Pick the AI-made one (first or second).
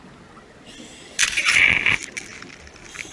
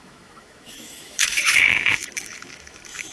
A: second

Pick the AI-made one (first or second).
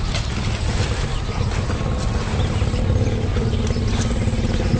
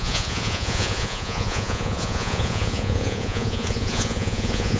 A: second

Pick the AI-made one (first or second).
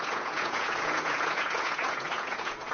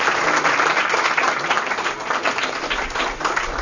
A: first